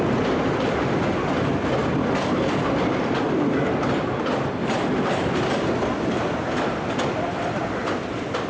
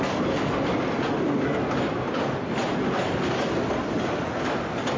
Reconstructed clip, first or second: first